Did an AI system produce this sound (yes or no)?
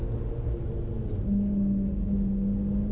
no